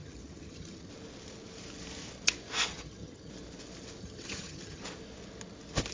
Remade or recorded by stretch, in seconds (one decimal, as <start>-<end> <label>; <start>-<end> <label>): 0.0-0.9 remade; 0.9-2.7 recorded; 2.7-3.3 remade; 3.3-4.0 recorded; 4.0-4.8 remade; 4.8-5.9 recorded